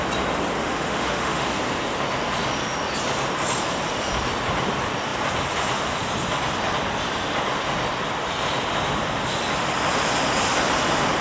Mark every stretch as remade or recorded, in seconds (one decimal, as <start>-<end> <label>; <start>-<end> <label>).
0.0-0.6 recorded; 0.6-1.5 remade; 1.5-11.2 recorded

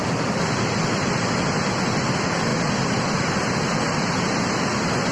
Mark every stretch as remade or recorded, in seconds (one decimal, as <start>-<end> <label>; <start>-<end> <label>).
0.0-0.7 recorded; 0.7-5.1 remade

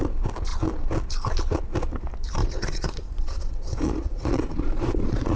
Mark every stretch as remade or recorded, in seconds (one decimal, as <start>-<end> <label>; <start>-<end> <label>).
0.0-2.4 recorded; 2.4-5.4 remade

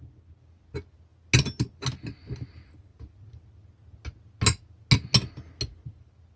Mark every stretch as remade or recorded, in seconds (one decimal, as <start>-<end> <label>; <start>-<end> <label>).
0.0-6.4 recorded

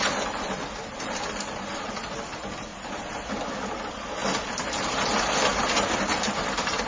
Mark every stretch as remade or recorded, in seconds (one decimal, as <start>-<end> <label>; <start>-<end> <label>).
0.0-2.7 recorded; 2.7-3.3 remade; 3.3-6.9 recorded

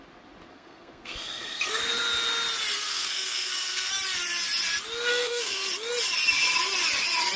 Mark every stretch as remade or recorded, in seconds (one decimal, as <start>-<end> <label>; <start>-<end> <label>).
0.0-0.5 recorded; 0.5-1.8 remade; 1.8-2.7 recorded; 2.7-3.9 remade; 3.9-5.1 recorded; 5.1-5.6 remade; 5.6-7.4 recorded